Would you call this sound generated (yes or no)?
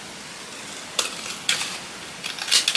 no